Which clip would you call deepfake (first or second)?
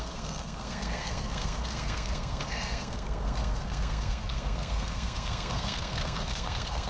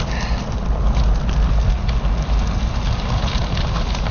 first